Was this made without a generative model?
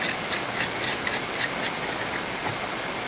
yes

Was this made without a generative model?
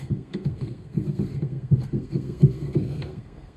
no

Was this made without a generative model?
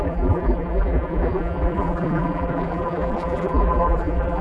no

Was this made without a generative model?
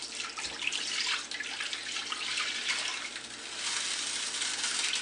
yes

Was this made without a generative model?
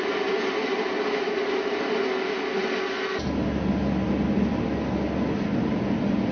yes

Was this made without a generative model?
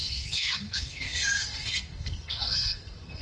no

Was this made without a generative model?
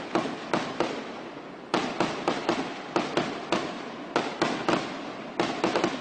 yes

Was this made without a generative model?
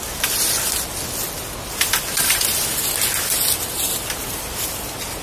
yes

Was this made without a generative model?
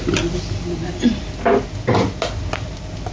yes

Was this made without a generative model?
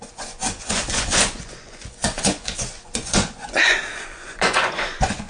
no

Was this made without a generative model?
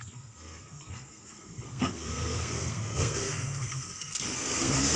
no